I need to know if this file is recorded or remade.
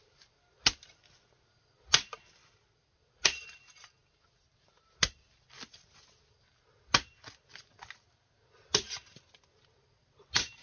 recorded